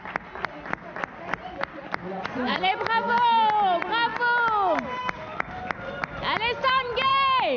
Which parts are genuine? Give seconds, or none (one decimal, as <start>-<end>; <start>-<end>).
0.0-2.2; 2.7-7.6